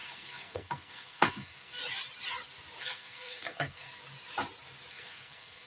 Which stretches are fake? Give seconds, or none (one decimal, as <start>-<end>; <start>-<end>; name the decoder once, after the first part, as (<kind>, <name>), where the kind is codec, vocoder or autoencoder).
0.0-1.8 (codec, SNAC); 2.8-4.0; 4.9-5.7